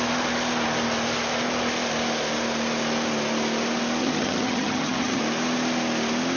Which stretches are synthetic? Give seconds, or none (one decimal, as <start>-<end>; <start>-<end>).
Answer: 4.0-5.2